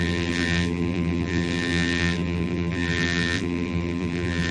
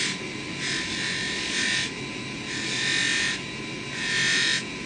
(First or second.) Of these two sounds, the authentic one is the second